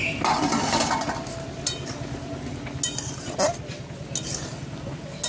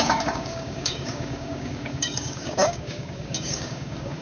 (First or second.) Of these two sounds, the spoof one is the second